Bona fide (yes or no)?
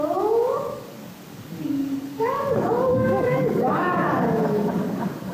no